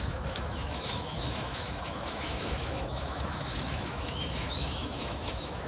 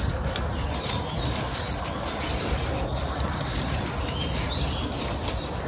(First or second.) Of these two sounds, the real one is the second